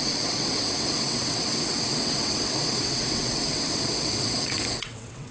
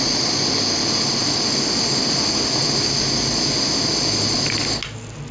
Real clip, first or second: second